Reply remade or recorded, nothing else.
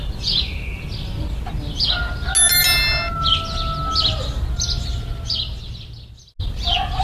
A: recorded